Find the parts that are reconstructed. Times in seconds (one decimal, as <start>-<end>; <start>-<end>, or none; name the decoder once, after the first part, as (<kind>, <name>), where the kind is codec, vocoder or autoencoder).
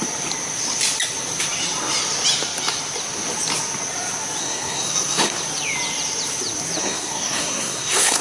4.4-5.4 (codec, SNAC); 6.8-8.2